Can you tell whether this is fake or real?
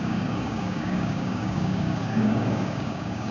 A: fake